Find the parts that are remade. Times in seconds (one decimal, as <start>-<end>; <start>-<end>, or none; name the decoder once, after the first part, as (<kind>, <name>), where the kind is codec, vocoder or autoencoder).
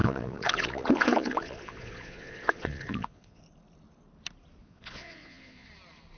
0.0-3.4 (vocoder, Vocos); 4.6-5.7